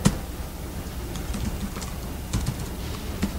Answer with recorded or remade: recorded